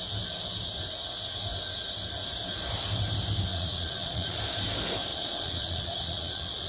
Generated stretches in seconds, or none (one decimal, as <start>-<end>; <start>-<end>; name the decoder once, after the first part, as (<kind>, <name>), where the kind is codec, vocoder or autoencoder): 3.5-4.4 (vocoder, Vocos); 5.1-6.7